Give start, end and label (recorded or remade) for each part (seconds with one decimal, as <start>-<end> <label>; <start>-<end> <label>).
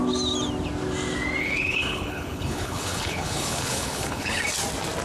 0.0-1.4 recorded; 1.4-4.4 remade; 4.4-5.0 recorded